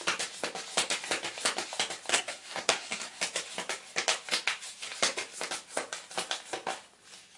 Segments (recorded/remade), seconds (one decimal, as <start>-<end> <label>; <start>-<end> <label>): 0.0-2.1 recorded; 2.1-3.2 remade; 3.2-7.4 recorded